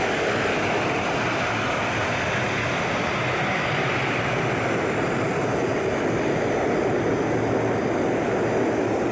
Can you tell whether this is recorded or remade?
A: recorded